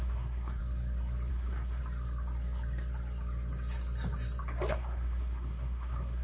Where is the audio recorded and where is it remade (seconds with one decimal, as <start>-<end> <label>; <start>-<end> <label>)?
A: 0.0-0.6 remade; 0.6-1.3 recorded; 1.3-1.8 remade; 1.8-4.7 recorded; 4.7-6.2 remade